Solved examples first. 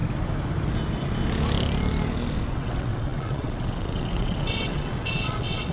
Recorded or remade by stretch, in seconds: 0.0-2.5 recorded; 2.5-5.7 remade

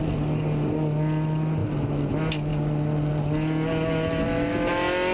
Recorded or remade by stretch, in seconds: 0.0-5.1 recorded